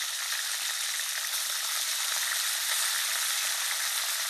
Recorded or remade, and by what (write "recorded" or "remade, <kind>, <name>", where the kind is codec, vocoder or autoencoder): recorded